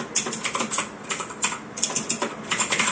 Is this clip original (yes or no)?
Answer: yes